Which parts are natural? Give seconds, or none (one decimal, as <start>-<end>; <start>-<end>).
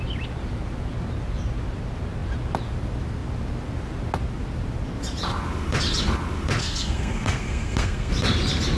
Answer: 0.0-6.6; 8.1-8.8